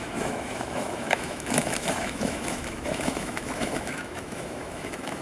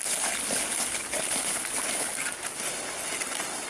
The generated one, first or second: first